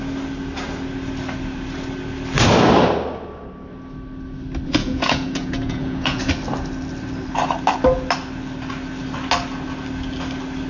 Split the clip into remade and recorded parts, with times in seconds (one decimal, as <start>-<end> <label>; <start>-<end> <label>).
0.0-4.8 recorded; 4.8-6.3 remade; 6.3-10.7 recorded